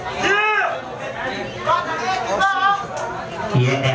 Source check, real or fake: real